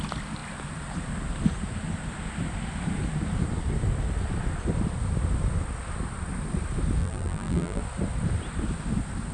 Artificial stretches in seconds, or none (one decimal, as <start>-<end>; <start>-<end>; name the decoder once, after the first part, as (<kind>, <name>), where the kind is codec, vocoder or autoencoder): 7.0-7.8 (vocoder, BigVGAN v2)